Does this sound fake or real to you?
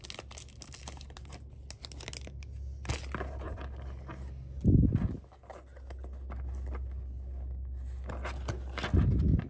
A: real